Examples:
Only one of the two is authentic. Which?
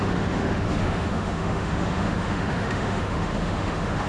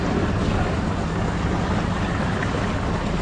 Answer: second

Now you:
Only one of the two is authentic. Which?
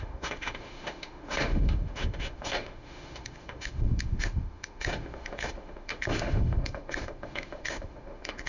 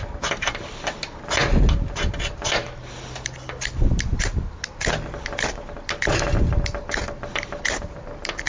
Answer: second